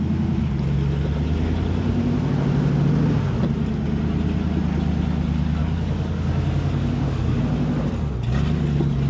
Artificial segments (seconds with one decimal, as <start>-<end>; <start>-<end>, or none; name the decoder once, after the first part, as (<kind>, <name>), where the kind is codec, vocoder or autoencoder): 5.6-7.4 (codec, DAC)